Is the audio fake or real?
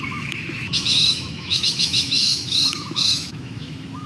fake